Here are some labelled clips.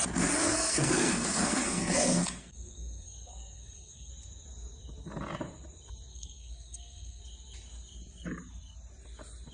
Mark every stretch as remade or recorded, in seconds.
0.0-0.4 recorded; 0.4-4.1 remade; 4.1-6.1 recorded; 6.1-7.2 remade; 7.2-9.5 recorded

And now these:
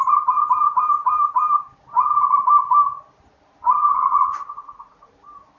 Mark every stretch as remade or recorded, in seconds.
0.0-3.8 recorded; 3.8-5.1 remade; 5.1-5.6 recorded

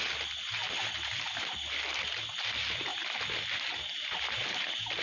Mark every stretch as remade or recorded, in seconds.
0.0-5.0 recorded

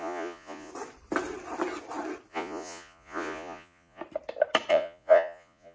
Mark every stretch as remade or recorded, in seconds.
0.0-0.7 remade; 0.7-2.3 recorded; 2.3-4.0 remade; 4.0-4.7 recorded; 4.7-5.7 remade

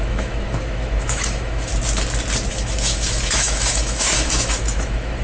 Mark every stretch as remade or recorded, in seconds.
0.0-1.7 remade; 1.7-2.5 recorded; 2.5-5.2 remade